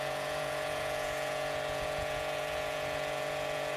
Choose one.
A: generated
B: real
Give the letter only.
A